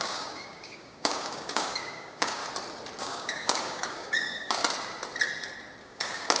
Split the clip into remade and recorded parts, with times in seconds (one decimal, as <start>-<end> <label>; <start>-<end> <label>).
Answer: 0.0-2.4 remade; 2.4-3.0 recorded; 3.0-4.6 remade; 4.6-5.8 recorded; 5.8-6.4 remade